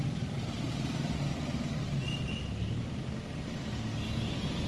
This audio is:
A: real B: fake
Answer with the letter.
A